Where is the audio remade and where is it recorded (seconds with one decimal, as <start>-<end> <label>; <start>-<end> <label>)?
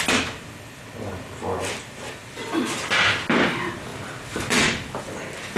0.0-3.9 recorded; 3.9-5.0 remade; 5.0-5.6 recorded